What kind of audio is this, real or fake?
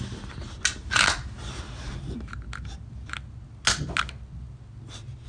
real